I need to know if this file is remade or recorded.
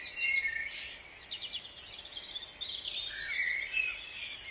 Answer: recorded